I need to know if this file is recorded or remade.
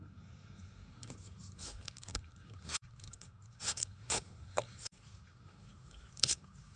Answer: remade